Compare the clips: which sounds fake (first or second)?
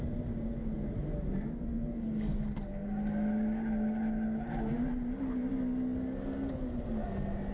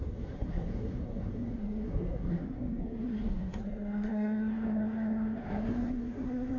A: second